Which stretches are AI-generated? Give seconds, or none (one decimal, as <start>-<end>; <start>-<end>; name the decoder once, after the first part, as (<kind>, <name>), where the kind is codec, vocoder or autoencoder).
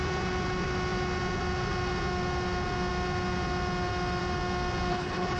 4.9-5.4 (codec, HILCodec)